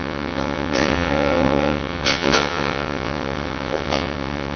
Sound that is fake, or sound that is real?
fake